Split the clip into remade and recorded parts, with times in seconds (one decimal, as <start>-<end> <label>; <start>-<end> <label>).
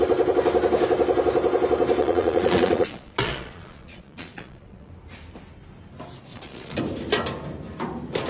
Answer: 0.0-2.0 recorded; 2.0-4.9 remade; 4.9-6.3 recorded; 6.3-6.8 remade; 6.8-8.3 recorded